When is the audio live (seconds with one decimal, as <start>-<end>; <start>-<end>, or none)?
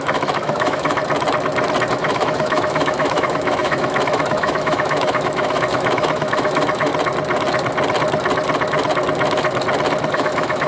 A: 1.0-1.9; 6.9-10.1